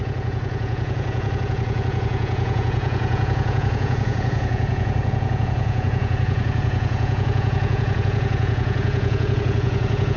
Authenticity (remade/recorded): remade